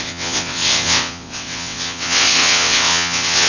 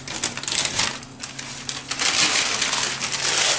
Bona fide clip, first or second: second